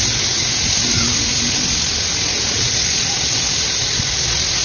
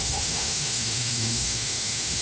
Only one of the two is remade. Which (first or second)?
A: second